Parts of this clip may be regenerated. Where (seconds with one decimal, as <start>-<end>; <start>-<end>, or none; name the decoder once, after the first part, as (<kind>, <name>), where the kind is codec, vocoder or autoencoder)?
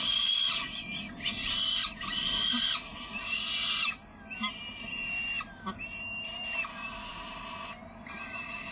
none